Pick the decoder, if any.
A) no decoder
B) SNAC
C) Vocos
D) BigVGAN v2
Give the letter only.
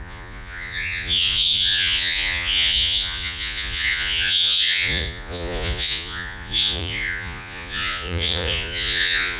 C